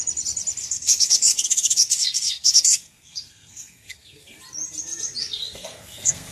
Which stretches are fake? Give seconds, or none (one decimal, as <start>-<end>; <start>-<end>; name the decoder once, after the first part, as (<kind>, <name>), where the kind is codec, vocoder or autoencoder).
0.6-4.4 (codec, SNAC); 5.2-6.3